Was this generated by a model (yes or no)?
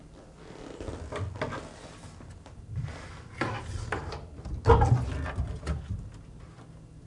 no